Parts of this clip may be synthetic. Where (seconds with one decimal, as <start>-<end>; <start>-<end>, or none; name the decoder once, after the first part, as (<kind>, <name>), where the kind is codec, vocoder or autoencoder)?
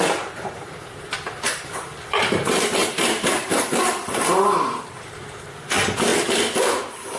0.0-6.1 (vocoder, BigVGAN v2); 6.8-7.2